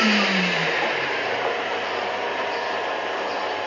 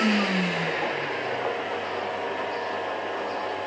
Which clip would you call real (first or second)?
second